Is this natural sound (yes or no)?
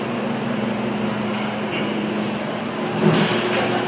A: yes